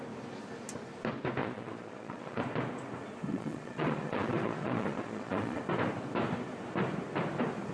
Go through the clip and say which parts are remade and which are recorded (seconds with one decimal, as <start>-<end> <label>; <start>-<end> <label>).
0.0-1.4 recorded; 1.4-2.4 remade; 2.4-3.3 recorded; 3.3-5.6 remade; 5.6-7.7 recorded